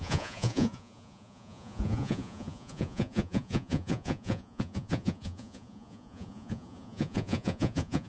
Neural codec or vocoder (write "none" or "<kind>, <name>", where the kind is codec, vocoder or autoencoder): vocoder, Vocos